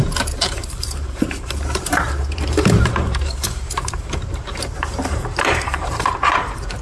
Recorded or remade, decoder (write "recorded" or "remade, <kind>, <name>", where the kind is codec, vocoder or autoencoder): remade, vocoder, BigVGAN v2